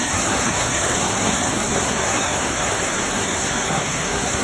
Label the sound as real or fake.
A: fake